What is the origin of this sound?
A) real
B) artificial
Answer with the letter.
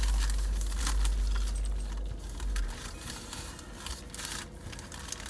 A